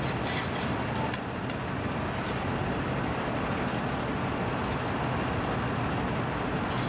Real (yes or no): yes